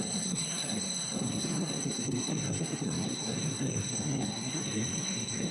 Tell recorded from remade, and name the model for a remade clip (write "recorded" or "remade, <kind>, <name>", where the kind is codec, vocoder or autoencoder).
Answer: remade, codec, SNAC